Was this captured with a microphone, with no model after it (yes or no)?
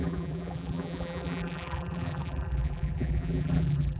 no